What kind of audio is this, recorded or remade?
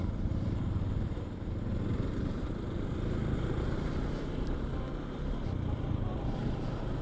remade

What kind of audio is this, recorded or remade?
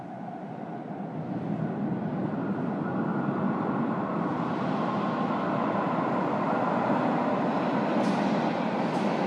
recorded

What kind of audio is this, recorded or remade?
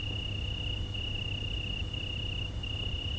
recorded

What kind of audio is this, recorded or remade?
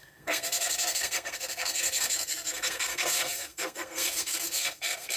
remade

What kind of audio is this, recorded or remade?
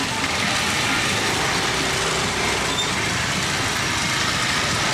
recorded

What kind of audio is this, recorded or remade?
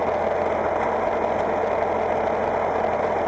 recorded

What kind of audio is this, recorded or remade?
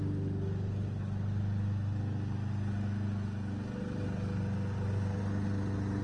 recorded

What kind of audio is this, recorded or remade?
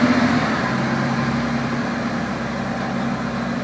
recorded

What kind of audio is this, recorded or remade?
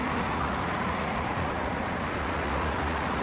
remade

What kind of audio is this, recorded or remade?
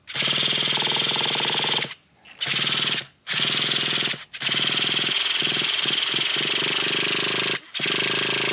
recorded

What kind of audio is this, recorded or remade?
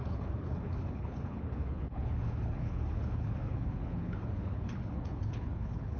remade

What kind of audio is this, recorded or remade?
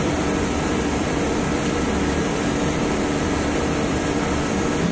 remade